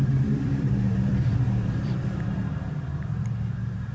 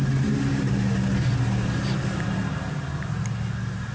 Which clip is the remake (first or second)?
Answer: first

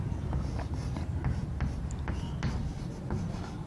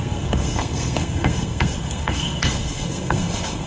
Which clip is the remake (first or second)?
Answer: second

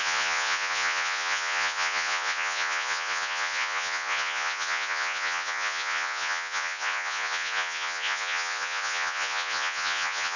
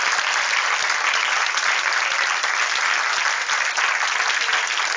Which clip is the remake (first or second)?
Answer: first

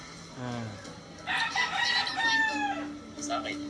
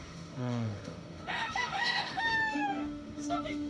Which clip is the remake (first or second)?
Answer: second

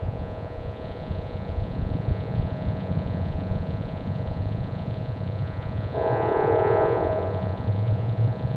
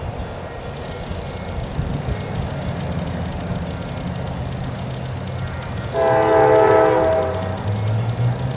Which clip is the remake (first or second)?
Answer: first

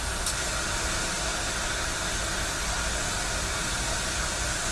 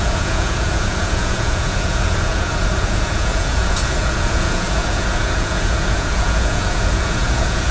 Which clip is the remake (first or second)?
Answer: second